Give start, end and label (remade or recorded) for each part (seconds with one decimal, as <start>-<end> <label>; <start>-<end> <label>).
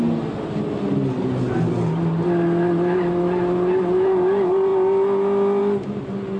0.0-6.4 recorded